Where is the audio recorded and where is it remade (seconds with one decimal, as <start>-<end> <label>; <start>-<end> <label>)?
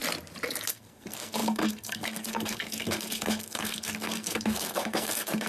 0.0-0.7 recorded; 0.7-5.5 remade